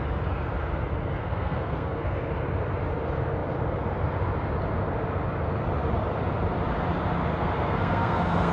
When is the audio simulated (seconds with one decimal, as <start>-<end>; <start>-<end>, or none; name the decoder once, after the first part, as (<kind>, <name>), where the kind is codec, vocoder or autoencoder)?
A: 1.2-2.3 (codec, SNAC); 7.3-8.5

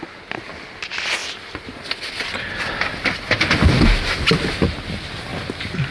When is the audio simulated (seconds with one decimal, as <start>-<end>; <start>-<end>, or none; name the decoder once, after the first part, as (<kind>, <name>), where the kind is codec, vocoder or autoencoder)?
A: none